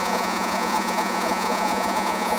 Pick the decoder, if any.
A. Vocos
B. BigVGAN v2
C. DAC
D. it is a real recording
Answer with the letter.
A